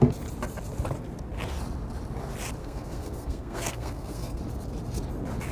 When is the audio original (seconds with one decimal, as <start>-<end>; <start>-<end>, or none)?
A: 0.0-2.6; 4.4-5.5